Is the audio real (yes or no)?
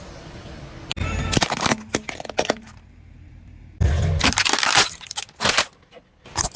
yes